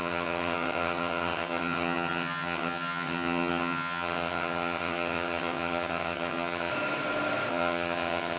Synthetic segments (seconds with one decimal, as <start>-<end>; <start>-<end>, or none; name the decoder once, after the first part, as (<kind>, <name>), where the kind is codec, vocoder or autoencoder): 0.0-6.7 (vocoder, HiFi-GAN); 7.5-8.4